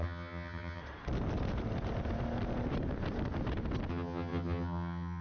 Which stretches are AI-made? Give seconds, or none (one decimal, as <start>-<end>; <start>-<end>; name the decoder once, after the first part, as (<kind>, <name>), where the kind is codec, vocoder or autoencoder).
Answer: 0.0-0.8 (vocoder, HiFi-GAN); 3.9-5.2